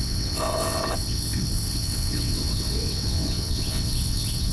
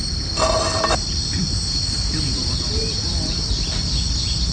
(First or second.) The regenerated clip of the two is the first